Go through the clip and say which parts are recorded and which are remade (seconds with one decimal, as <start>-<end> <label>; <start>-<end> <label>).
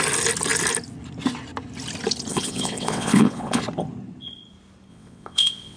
0.0-2.3 recorded; 2.3-3.6 remade; 3.6-4.9 recorded; 4.9-5.8 remade